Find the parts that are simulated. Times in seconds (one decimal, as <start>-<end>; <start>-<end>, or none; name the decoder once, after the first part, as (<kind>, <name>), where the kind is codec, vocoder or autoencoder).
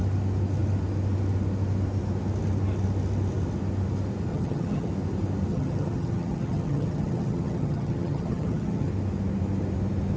4.3-4.9 (vocoder, HiFi-GAN); 5.5-8.9